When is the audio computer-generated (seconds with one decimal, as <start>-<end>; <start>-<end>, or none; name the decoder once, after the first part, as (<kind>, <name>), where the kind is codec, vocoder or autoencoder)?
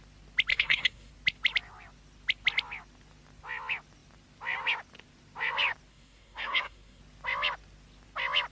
0.5-1.1 (codec, SNAC); 5.9-7.0